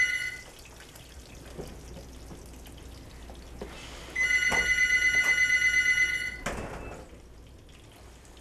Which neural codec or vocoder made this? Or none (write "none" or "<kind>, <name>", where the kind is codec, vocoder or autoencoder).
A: none